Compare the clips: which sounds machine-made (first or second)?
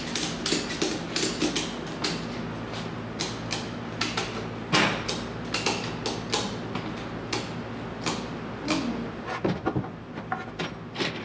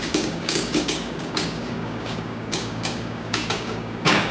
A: second